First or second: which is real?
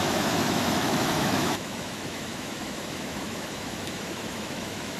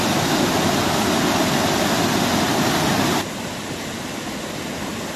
second